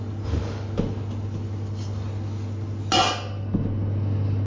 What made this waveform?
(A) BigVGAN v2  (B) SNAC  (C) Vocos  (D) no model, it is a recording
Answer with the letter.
D